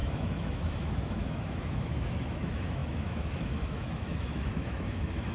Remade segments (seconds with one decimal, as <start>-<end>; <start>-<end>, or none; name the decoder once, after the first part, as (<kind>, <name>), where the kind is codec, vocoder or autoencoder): 0.0-5.3 (autoencoder, DAC-VAE)